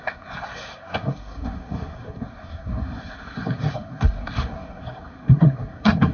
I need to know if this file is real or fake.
fake